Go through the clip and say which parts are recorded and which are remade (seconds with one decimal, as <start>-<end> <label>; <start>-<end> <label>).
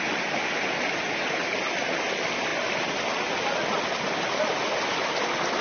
0.0-5.6 recorded